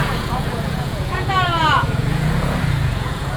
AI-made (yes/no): yes